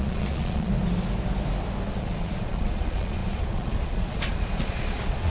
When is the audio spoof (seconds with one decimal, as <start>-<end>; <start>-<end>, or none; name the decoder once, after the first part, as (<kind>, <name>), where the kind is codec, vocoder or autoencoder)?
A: 0.0-0.7 (vocoder, Vocos); 2.0-5.3